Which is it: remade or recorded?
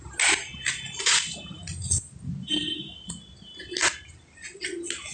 recorded